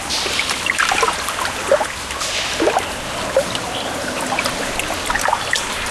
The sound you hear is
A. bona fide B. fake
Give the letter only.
A